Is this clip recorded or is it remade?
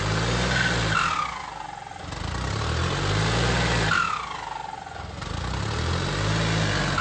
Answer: recorded